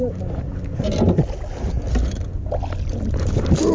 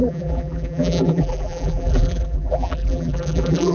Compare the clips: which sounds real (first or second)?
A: first